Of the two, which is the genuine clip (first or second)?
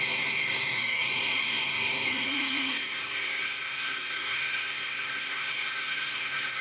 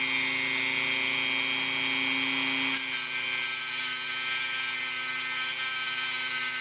second